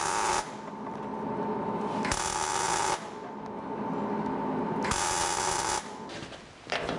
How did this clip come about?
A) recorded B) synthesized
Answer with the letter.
A